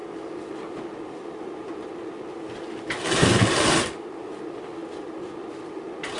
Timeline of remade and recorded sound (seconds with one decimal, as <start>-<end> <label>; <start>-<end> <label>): 0.0-6.2 recorded